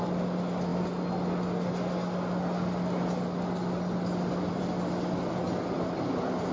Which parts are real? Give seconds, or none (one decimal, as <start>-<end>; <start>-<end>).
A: 0.0-6.5